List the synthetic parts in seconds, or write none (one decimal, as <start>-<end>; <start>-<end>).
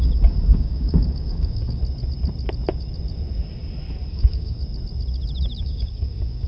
0.0-1.8; 4.1-4.6; 5.6-6.5